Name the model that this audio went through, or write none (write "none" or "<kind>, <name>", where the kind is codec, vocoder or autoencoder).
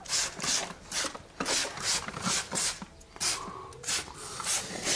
none